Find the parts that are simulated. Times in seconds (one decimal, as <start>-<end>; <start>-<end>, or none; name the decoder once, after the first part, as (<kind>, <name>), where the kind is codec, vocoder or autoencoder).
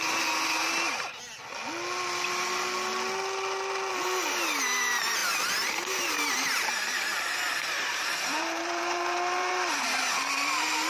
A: 5.2-10.1 (vocoder, BigVGAN v2)